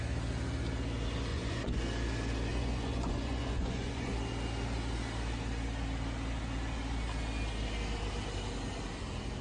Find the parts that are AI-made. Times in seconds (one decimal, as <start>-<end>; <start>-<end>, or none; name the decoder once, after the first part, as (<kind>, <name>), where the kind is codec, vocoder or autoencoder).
1.3-1.8 (vocoder, Vocos); 2.5-4.1